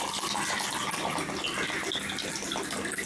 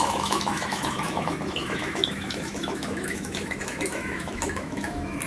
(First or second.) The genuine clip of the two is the first